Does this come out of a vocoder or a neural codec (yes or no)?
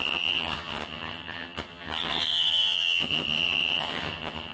yes